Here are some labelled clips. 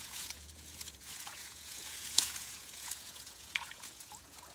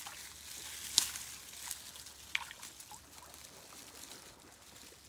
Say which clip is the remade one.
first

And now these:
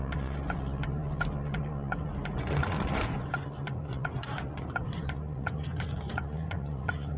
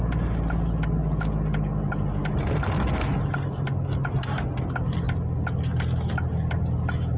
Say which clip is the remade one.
first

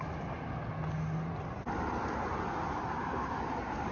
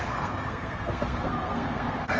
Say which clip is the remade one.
second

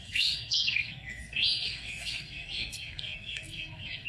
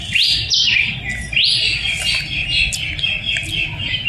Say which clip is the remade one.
first